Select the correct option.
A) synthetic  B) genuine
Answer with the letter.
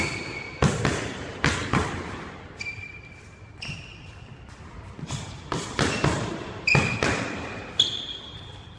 A